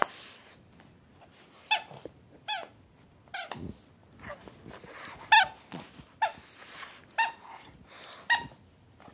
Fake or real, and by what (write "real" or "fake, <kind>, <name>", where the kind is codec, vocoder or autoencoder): real